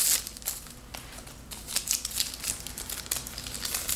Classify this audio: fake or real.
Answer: real